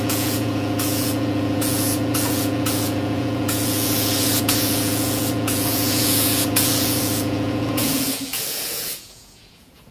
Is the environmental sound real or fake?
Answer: fake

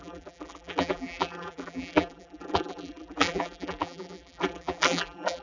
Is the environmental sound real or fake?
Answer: fake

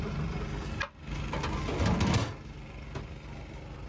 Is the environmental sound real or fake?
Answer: real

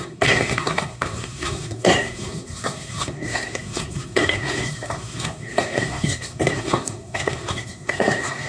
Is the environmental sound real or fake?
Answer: fake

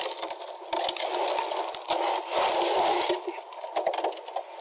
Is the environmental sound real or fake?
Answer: real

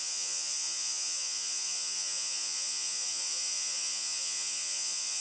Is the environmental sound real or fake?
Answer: fake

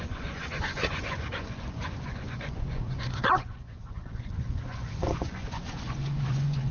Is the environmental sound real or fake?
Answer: fake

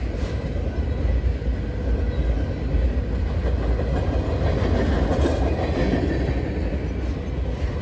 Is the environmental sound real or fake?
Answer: real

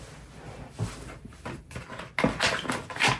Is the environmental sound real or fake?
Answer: real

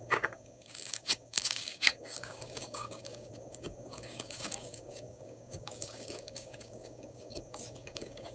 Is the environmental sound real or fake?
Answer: fake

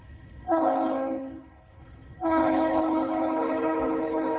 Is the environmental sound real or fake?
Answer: fake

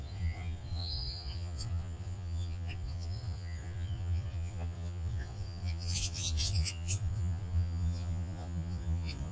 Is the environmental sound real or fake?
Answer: fake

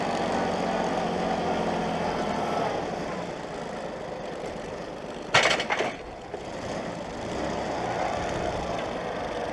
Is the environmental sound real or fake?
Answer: real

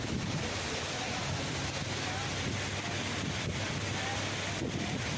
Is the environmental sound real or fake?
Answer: real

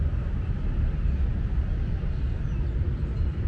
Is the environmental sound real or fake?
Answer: real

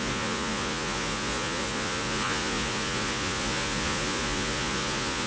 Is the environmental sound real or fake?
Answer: fake